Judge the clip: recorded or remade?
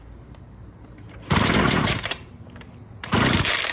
remade